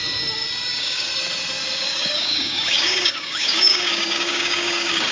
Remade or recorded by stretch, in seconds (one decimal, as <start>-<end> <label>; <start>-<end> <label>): 0.0-0.7 recorded; 0.7-1.1 remade; 1.1-1.8 recorded; 1.8-5.1 remade